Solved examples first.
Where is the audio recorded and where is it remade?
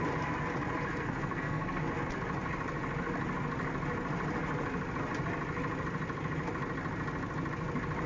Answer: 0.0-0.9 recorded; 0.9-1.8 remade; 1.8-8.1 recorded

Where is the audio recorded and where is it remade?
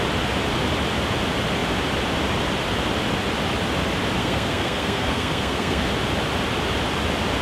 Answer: 0.0-4.2 recorded; 4.2-5.9 remade; 5.9-7.4 recorded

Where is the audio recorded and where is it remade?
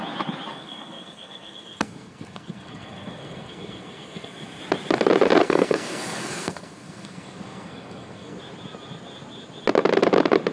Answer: 0.0-0.5 recorded; 0.5-4.6 remade; 4.6-5.4 recorded; 5.4-8.4 remade; 8.4-10.5 recorded